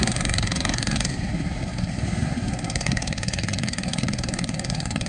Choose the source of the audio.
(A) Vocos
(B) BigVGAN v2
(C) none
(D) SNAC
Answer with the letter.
D